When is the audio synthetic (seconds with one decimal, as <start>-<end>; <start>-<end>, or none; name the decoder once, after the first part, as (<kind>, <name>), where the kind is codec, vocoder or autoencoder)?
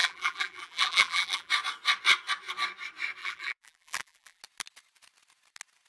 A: 0.0-1.5 (vocoder, BigVGAN v2); 3.2-4.4